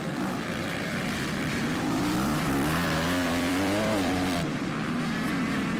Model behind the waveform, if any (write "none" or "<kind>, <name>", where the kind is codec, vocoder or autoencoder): vocoder, BigVGAN v2